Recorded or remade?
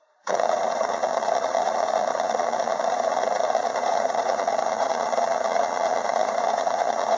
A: remade